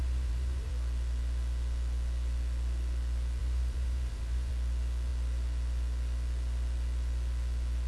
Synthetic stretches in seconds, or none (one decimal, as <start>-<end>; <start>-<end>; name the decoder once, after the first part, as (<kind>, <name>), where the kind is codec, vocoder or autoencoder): 0.0-0.7 (vocoder, BigVGAN v2); 3.4-4.5